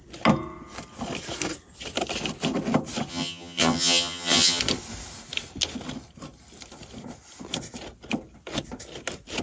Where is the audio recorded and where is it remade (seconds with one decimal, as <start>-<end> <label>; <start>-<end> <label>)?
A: 0.0-3.1 recorded; 3.1-4.6 remade; 4.6-9.4 recorded